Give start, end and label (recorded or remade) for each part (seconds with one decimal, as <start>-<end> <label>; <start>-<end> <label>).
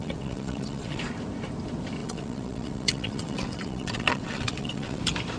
0.0-1.0 remade; 1.0-2.0 recorded; 2.0-5.0 remade; 5.0-5.4 recorded